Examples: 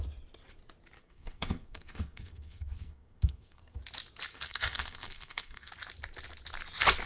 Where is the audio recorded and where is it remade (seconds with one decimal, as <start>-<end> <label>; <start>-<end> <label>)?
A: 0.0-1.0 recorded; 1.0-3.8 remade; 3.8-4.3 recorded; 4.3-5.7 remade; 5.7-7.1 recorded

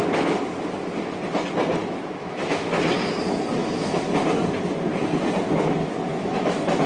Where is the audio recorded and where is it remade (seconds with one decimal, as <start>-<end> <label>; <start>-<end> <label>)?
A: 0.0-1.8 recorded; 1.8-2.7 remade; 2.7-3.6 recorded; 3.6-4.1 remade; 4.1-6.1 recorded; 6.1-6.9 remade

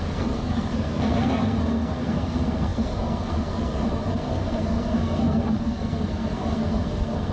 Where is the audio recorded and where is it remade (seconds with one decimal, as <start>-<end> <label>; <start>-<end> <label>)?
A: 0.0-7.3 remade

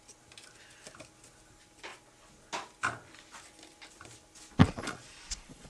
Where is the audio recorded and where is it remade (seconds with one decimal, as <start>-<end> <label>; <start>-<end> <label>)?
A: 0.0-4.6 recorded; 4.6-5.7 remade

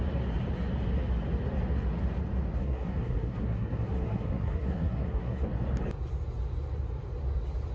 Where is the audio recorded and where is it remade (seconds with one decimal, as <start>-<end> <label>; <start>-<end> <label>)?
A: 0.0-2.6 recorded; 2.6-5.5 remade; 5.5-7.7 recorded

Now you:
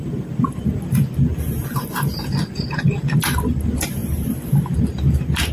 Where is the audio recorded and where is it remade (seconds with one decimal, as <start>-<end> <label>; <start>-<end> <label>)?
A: 0.0-1.3 recorded; 1.3-2.9 remade; 2.9-5.5 recorded